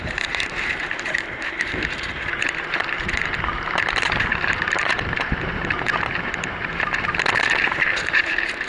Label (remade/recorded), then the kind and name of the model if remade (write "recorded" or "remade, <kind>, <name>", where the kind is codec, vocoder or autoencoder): remade, vocoder, BigVGAN v2